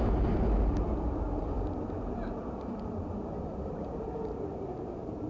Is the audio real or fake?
fake